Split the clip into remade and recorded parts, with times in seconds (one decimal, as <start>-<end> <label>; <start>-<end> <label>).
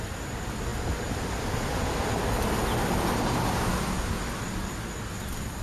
0.0-5.6 recorded